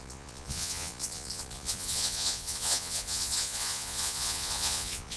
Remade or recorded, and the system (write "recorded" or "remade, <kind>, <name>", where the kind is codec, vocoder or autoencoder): remade, vocoder, Vocos